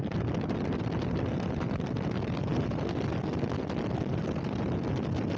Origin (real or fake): real